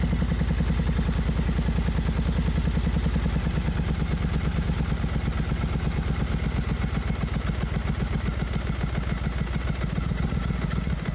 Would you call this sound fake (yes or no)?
no